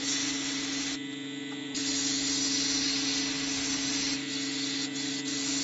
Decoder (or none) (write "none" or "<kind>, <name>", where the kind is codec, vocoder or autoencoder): none